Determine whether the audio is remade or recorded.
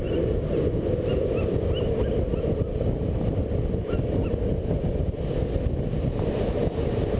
recorded